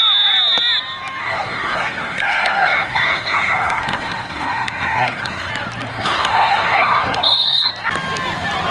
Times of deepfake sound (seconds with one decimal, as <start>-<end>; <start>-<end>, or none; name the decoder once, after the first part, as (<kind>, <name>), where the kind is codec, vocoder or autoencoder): 1.2-5.5 (codec, SNAC); 5.9-7.7

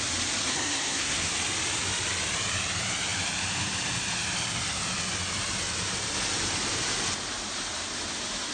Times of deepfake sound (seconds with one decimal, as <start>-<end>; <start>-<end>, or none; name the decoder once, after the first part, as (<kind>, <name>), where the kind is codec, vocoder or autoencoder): 0.4-1.3 (codec, SNAC)

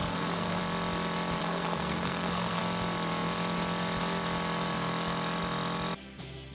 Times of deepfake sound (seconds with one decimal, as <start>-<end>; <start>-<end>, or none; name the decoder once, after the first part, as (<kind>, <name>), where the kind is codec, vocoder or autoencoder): 0.0-0.6 (codec, SNAC); 1.4-2.6

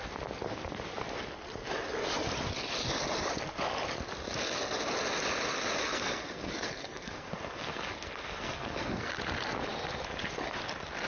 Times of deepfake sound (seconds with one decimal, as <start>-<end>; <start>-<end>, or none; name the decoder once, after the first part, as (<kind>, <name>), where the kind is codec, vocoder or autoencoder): 5.8-9.1 (codec, SNAC)

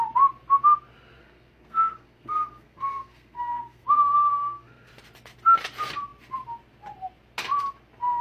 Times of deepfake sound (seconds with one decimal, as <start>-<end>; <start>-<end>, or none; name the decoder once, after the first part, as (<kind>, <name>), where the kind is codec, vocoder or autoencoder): 1.2-4.9 (codec, SNAC)

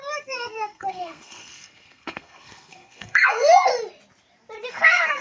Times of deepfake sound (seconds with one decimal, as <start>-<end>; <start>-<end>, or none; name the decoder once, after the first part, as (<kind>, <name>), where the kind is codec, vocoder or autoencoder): 0.0-3.7 (codec, SNAC); 4.7-5.2